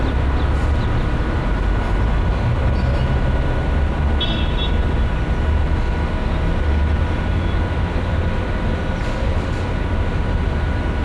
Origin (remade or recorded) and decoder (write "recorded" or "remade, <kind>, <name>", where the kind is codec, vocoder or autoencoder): recorded